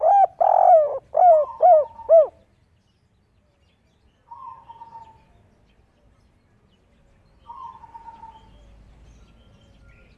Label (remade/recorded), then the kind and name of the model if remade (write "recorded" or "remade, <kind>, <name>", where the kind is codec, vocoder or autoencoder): recorded